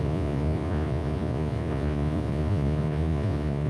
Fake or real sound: fake